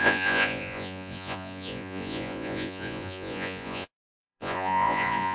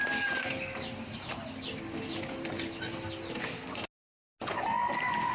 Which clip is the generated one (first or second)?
first